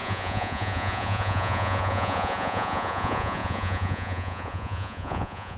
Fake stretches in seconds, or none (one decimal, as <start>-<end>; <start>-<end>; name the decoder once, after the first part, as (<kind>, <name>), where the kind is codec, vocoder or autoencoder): 0.0-5.6 (vocoder, Vocos)